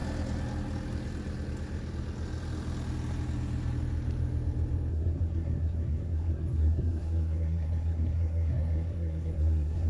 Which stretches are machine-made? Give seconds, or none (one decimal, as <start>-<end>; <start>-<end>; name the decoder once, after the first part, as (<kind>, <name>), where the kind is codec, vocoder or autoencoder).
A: 4.9-9.9 (codec, SNAC)